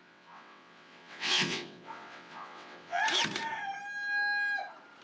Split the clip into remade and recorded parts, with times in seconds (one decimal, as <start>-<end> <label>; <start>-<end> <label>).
0.0-3.0 remade; 3.0-5.0 recorded